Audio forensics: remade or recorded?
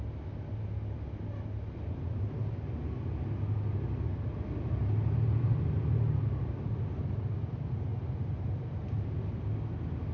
recorded